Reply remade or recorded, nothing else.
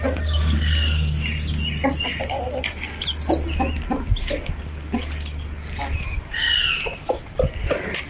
recorded